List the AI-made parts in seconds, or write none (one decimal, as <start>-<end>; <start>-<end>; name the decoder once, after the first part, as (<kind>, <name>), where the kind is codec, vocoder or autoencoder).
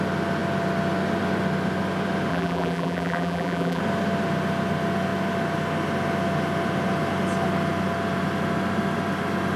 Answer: 2.3-3.8 (vocoder, BigVGAN v2)